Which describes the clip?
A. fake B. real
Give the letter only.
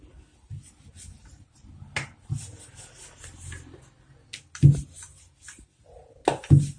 B